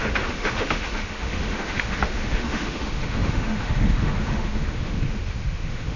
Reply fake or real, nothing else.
fake